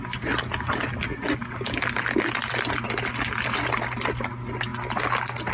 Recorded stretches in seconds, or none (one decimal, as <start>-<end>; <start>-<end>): 0.0-5.5